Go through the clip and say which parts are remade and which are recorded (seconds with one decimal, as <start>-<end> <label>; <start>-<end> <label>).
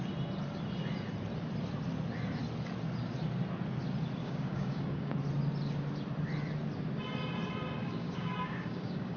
0.0-4.2 recorded; 4.2-5.1 remade; 5.1-7.8 recorded; 7.8-9.2 remade